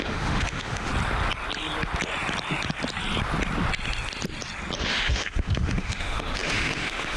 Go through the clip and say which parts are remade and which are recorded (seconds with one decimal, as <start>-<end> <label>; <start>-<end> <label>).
0.0-0.9 remade; 0.9-4.8 recorded; 4.8-7.2 remade